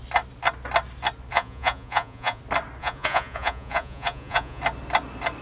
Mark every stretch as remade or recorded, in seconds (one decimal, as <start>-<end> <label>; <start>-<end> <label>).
0.0-1.3 recorded; 1.3-2.4 remade; 2.4-2.8 recorded; 2.8-4.6 remade; 4.6-5.4 recorded